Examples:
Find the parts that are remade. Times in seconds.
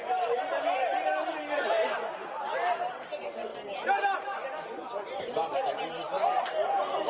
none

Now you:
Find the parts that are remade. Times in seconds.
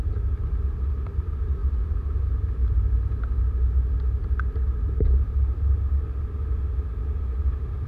1.6-2.2 (vocoder, BigVGAN v2); 2.6-3.4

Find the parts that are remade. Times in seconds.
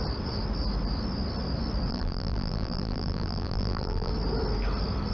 1.9-4.1 (vocoder, BigVGAN v2)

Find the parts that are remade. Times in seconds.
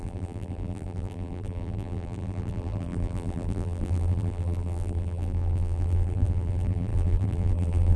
0.0-8.0 (vocoder, BigVGAN v2)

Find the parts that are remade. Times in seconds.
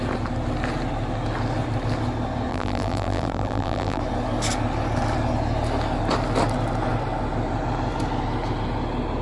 2.5-4.0 (vocoder, BigVGAN v2)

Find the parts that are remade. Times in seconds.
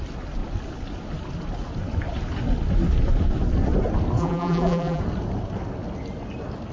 4.2-5.0 (vocoder, BigVGAN v2)